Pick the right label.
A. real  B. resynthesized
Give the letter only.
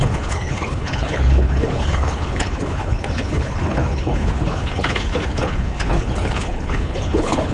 B